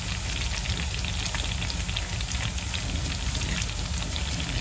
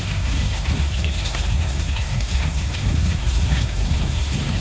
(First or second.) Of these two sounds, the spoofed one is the second